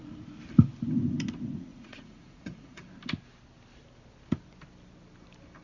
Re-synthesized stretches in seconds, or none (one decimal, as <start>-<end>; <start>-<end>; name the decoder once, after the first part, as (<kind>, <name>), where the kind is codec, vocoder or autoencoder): 1.7-2.9 (vocoder, Vocos)